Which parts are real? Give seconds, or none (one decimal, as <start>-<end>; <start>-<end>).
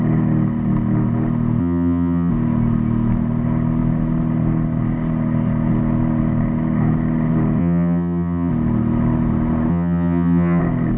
0.0-1.6; 2.3-7.6; 8.5-9.7; 10.6-11.0